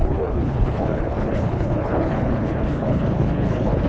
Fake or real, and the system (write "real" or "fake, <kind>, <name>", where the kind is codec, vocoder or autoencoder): fake, codec, HILCodec